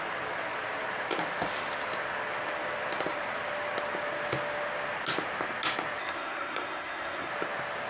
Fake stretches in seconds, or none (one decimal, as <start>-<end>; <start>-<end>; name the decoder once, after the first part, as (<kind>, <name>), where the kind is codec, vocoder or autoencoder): 6.0-7.3 (codec, SNAC)